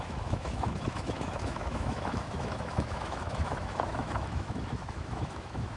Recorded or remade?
remade